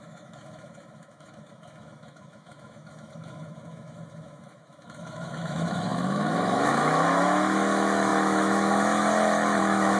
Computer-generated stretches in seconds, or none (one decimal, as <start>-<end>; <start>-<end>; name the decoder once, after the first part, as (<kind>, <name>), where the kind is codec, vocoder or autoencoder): 0.0-10.0 (autoencoder, DAC-VAE)